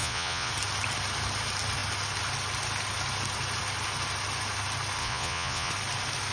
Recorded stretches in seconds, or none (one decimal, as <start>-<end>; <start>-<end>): 0.5-5.0; 5.7-6.3